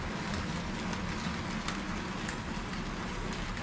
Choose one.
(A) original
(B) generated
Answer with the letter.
A